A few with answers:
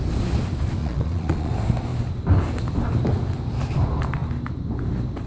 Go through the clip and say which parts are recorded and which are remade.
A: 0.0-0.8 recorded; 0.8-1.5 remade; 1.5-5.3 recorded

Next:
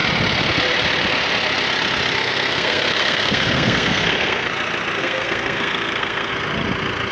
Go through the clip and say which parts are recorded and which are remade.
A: 0.0-2.2 recorded; 2.2-4.5 remade; 4.5-5.0 recorded; 5.0-6.3 remade; 6.3-7.1 recorded

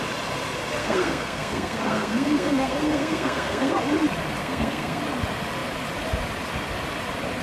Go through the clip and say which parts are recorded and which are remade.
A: 0.0-0.8 recorded; 0.8-3.8 remade; 3.8-4.4 recorded; 4.4-5.0 remade; 5.0-7.4 recorded

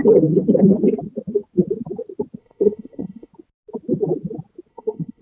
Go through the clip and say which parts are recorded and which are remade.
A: 0.0-2.4 recorded; 2.4-3.3 remade; 3.3-4.7 recorded; 4.7-5.2 remade